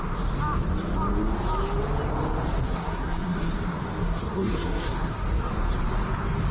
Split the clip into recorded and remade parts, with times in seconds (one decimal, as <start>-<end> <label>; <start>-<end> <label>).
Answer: 0.0-2.6 recorded; 2.6-3.5 remade; 3.5-4.0 recorded; 4.0-5.5 remade; 5.5-6.5 recorded

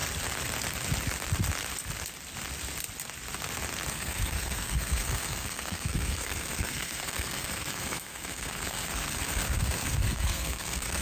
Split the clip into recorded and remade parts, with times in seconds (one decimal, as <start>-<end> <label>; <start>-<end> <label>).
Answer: 0.0-3.9 recorded; 3.9-11.0 remade

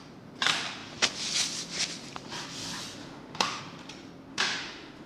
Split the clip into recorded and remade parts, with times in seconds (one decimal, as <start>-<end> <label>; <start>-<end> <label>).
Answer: 0.0-3.0 recorded; 3.0-3.6 remade; 3.6-4.3 recorded; 4.3-5.1 remade

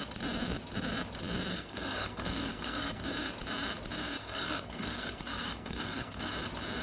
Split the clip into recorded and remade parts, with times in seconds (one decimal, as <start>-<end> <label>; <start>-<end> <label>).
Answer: 0.0-1.5 recorded; 1.5-3.0 remade; 3.0-4.2 recorded; 4.2-6.3 remade; 6.3-6.8 recorded